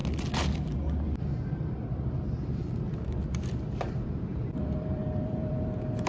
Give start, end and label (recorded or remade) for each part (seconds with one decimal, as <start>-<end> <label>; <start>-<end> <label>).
0.0-3.7 recorded; 3.7-6.1 remade